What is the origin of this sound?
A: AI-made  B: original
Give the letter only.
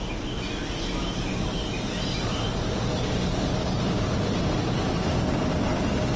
B